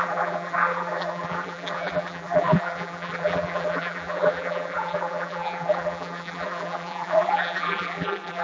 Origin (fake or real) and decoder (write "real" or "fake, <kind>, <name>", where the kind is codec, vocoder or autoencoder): fake, vocoder, BigVGAN v2